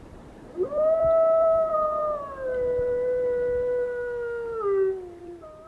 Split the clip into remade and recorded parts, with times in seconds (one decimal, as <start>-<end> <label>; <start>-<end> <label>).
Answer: 0.0-2.0 remade; 2.0-5.2 recorded; 5.2-5.7 remade